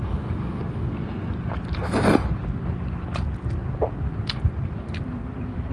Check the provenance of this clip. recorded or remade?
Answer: recorded